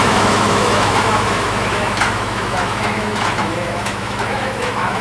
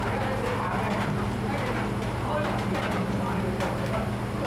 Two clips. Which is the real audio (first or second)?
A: second